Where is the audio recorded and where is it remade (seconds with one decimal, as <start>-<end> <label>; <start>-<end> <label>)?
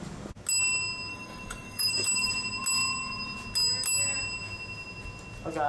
0.0-1.1 recorded; 1.1-2.3 remade; 2.3-5.7 recorded